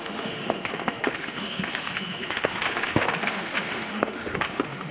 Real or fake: fake